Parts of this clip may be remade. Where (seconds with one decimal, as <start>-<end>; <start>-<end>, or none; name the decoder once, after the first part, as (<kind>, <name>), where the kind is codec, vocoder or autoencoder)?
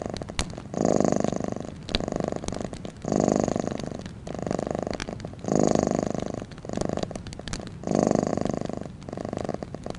none